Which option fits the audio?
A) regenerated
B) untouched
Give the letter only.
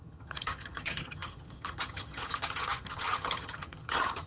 A